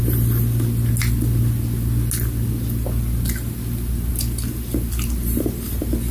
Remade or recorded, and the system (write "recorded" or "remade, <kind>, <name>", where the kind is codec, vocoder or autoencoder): recorded